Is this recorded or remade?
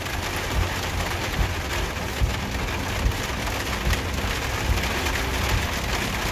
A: recorded